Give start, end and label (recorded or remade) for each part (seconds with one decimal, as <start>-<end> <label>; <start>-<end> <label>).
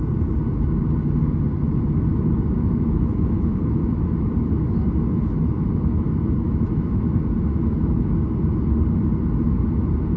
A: 0.0-2.1 recorded; 2.1-7.2 remade; 7.2-10.2 recorded